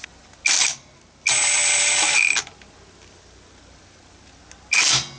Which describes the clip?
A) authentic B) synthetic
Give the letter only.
A